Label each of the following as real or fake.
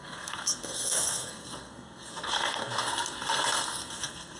fake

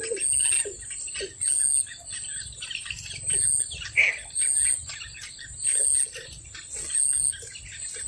real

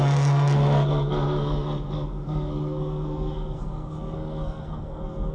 fake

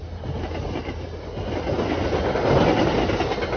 real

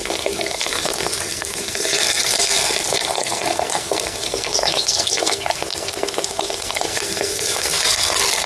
fake